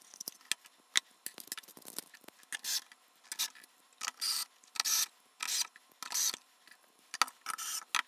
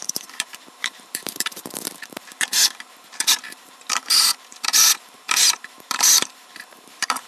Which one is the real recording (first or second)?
first